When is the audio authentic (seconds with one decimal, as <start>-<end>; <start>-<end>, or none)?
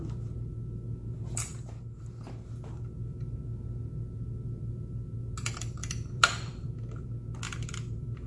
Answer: 0.0-5.8; 6.8-8.3